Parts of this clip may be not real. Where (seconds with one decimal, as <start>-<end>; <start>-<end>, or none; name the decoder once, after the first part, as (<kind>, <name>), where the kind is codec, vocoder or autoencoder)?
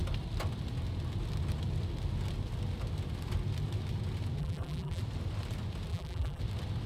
4.4-5.0 (vocoder, BigVGAN v2); 5.9-6.4